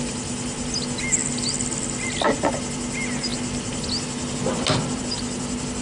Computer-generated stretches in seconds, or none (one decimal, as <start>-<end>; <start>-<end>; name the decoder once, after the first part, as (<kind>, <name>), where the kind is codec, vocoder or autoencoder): none